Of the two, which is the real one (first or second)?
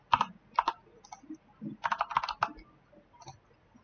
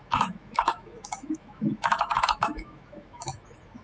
first